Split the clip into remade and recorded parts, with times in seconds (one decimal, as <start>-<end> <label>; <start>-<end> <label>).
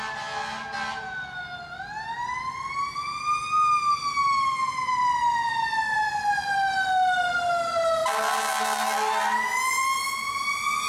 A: 0.0-10.9 recorded